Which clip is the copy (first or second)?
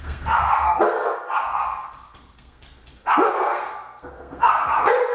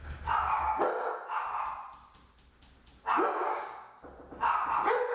first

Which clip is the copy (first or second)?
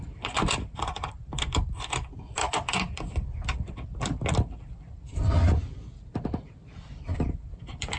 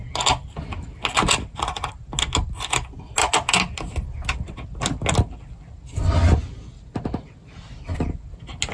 first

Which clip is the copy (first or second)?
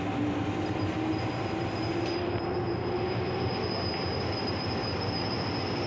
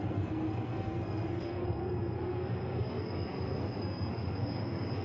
second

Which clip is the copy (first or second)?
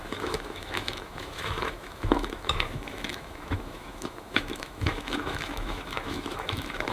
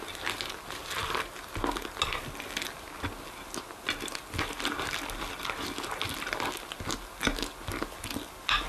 first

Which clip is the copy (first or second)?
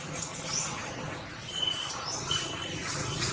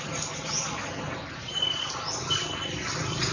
first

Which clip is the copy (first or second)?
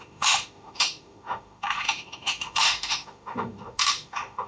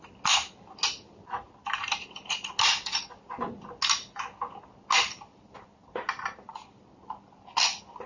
first